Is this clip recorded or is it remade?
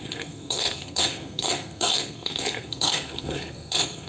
remade